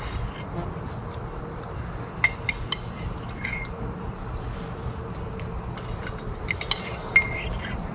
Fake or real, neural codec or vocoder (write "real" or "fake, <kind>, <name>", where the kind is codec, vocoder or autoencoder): real